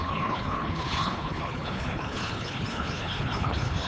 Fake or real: fake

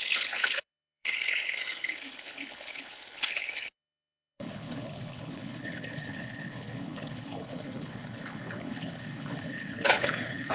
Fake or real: fake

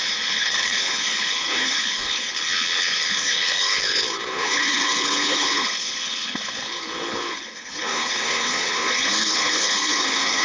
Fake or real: fake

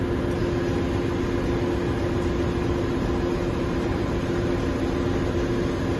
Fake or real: real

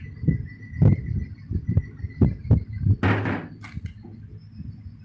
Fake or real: real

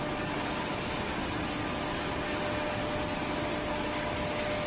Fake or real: real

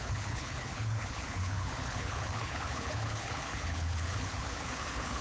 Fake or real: fake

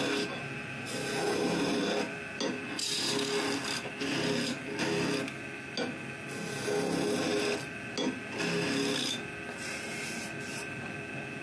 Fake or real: real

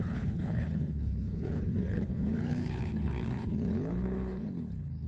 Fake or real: fake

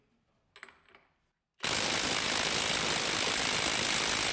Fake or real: real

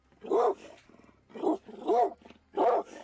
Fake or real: real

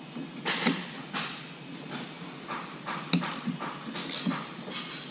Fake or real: real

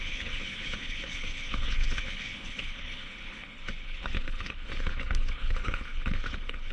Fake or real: fake